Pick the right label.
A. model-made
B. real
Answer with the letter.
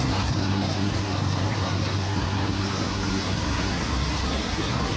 A